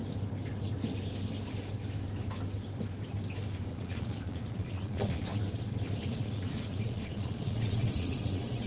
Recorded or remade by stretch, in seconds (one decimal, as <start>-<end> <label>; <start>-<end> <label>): 0.0-3.7 recorded; 3.7-5.4 remade; 5.4-6.1 recorded; 6.1-8.7 remade